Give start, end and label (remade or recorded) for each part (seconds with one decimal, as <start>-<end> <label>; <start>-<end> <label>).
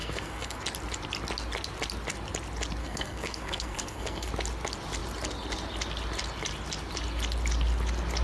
0.0-0.6 remade; 0.6-2.8 recorded; 2.8-4.3 remade; 4.3-8.2 recorded